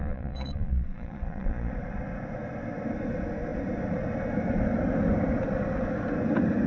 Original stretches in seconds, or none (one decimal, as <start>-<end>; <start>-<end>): 1.7-6.7